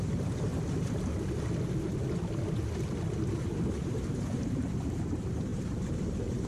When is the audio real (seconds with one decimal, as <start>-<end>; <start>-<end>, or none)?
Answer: 0.5-3.7

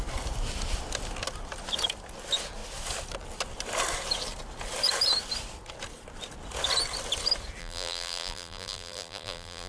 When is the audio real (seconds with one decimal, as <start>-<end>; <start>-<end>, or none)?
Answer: 0.0-7.6

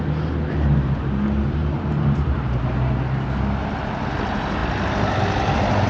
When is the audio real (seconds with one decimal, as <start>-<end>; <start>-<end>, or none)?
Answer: 0.0-1.6; 2.6-5.9

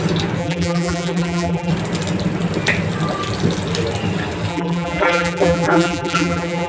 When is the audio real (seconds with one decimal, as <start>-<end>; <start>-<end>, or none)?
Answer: 0.0-0.4; 1.7-4.5

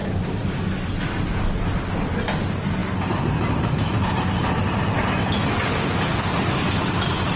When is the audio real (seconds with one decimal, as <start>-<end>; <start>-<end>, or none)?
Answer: 0.6-7.4

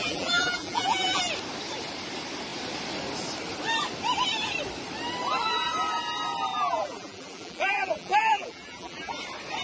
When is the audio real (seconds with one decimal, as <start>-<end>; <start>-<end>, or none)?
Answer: 1.2-6.5; 9.2-9.6